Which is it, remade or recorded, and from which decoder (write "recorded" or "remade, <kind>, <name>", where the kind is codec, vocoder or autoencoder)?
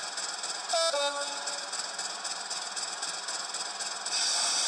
recorded